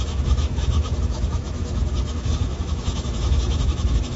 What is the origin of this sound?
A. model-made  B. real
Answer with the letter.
A